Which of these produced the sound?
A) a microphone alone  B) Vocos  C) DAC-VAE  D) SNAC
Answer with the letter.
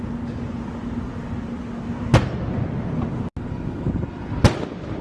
A